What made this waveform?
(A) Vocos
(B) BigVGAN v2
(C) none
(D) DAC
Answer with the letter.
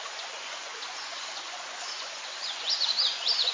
A